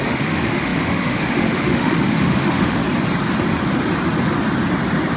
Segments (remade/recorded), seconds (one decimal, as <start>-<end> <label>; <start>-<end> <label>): 0.0-2.8 remade; 2.8-5.2 recorded